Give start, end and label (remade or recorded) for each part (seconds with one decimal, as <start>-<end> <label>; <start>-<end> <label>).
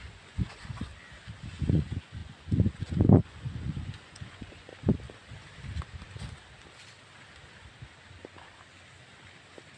0.0-0.9 remade; 0.9-1.5 recorded; 1.5-4.7 remade; 4.7-9.8 recorded